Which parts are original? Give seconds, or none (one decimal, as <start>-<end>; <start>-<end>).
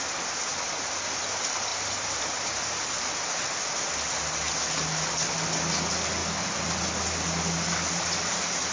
0.0-8.7